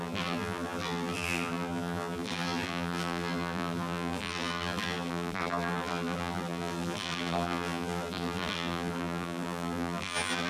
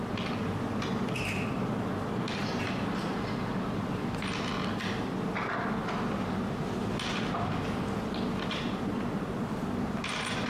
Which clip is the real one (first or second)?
second